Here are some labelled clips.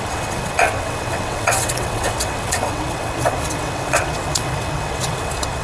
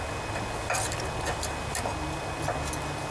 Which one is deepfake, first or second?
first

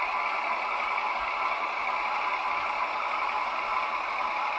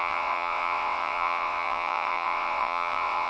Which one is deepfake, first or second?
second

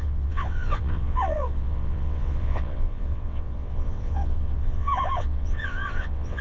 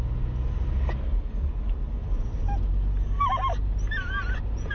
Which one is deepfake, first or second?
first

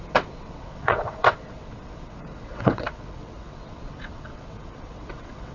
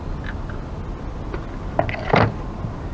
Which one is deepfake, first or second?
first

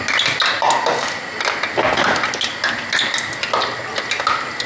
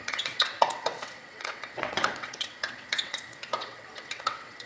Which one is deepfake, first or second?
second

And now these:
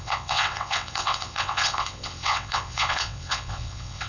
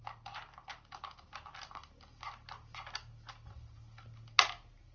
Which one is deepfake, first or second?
first